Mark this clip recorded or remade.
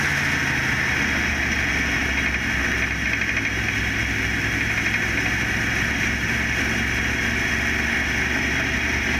recorded